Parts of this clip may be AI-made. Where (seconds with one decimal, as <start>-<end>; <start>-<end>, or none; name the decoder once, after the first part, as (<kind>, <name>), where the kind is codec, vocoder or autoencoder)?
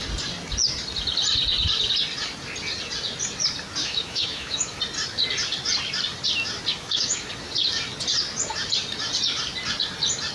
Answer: 3.8-4.8 (autoencoder, DAC-VAE); 6.7-7.3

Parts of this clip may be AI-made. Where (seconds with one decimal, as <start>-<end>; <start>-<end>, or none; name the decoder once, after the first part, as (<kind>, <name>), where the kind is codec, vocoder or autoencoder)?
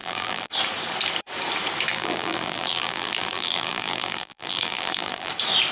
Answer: 0.0-0.5 (vocoder, BigVGAN v2); 1.9-5.3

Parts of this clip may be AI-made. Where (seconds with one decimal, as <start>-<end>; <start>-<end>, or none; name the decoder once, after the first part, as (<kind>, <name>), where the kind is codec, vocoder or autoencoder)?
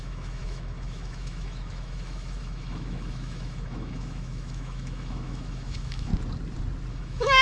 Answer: 0.0-6.1 (autoencoder, DAC-VAE); 6.9-7.4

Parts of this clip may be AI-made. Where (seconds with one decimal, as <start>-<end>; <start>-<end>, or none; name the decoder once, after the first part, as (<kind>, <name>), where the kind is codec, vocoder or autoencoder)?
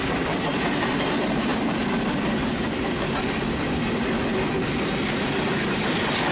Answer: none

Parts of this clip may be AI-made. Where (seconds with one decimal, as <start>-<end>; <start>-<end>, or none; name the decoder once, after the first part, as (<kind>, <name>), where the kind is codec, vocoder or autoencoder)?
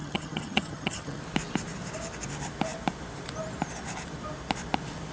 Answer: 0.0-1.2 (vocoder, HiFi-GAN)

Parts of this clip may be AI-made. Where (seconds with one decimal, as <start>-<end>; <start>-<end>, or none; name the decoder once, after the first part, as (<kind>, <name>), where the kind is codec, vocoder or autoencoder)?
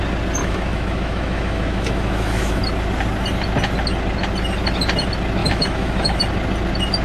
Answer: 0.4-2.6 (autoencoder, DAC-VAE); 5.4-6.2